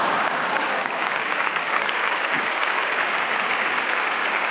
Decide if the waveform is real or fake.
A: fake